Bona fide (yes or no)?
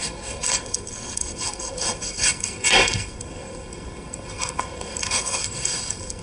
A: no